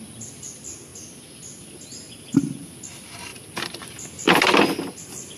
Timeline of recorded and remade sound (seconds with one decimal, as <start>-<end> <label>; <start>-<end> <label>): 0.0-5.4 recorded